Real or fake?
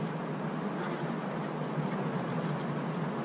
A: real